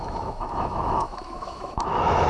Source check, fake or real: fake